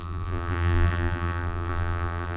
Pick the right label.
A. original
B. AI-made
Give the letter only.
B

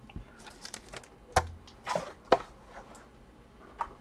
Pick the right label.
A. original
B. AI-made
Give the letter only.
A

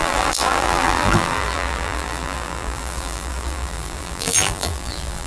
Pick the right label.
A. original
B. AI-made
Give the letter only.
B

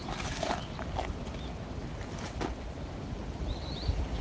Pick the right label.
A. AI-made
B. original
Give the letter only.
B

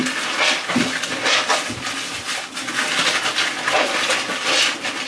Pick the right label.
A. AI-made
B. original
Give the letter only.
B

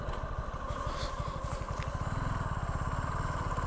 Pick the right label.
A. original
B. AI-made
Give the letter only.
A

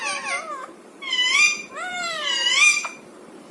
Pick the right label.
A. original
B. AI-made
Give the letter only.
B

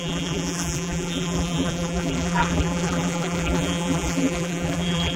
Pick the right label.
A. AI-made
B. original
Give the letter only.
A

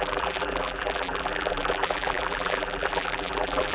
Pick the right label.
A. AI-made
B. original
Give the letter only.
A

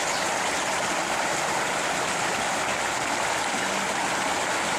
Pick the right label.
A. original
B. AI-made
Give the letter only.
A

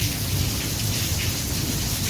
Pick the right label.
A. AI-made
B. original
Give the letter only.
B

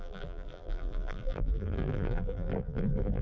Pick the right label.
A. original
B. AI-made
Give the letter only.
B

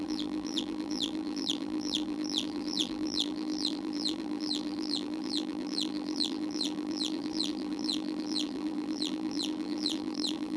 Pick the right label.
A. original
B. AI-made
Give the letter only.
B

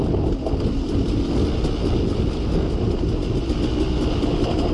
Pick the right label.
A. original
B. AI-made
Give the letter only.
A